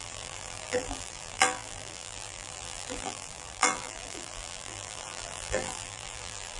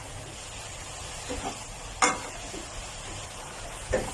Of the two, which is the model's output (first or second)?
first